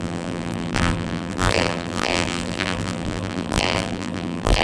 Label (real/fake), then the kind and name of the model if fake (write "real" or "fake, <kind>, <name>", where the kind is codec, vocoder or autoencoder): fake, vocoder, BigVGAN v2